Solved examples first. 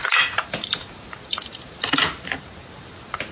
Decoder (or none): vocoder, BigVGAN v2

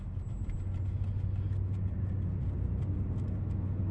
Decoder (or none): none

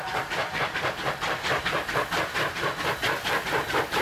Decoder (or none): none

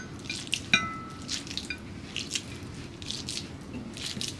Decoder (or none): none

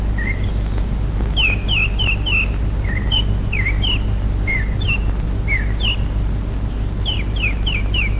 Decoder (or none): none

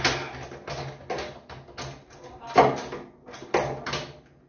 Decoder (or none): none